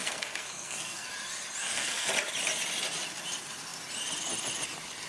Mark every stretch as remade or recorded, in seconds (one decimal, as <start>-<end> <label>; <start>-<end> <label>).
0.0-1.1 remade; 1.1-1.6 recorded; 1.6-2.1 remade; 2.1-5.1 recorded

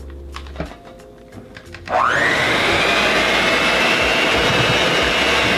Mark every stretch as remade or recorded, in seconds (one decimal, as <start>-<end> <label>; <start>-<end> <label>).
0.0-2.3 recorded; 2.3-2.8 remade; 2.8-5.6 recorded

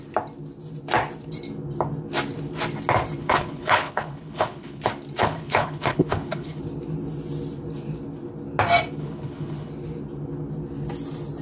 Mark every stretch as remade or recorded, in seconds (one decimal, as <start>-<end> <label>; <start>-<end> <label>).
0.0-3.2 recorded; 3.2-4.8 remade; 4.8-5.2 recorded; 5.2-6.6 remade; 6.6-9.0 recorded; 9.0-9.7 remade; 9.7-11.4 recorded